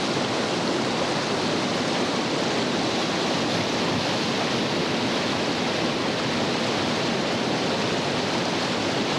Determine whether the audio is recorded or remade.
recorded